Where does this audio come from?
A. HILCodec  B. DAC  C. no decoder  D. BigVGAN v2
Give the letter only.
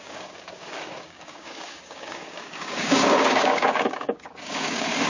B